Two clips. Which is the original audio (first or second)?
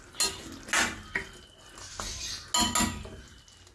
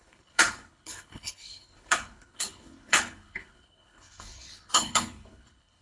first